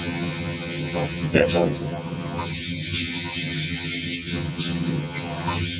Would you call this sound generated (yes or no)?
yes